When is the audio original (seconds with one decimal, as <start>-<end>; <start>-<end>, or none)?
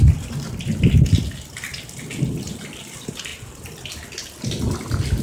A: 0.0-5.2